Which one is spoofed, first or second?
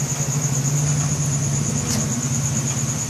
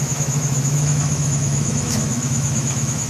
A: second